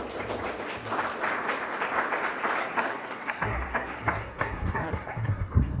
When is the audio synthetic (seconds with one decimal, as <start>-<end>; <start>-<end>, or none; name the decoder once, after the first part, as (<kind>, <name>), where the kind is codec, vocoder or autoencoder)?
2.6-5.8 (codec, SNAC)